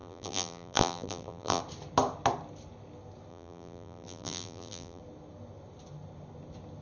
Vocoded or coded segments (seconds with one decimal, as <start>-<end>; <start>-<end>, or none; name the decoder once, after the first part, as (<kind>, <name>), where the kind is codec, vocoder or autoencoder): 0.0-1.6 (vocoder, BigVGAN v2); 3.3-5.0